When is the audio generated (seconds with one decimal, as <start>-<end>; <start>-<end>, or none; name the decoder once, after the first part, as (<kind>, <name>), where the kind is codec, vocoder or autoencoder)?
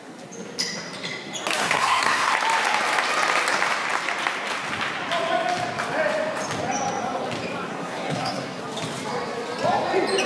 1.6-2.3 (codec, SNAC); 7.7-8.6